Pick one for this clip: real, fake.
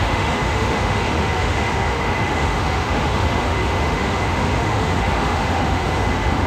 fake